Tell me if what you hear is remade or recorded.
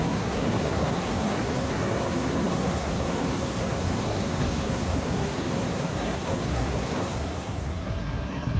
remade